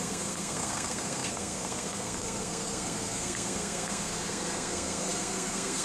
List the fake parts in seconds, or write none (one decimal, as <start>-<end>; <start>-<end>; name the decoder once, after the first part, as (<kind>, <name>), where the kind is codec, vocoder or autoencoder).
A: 0.0-5.8 (codec, SNAC)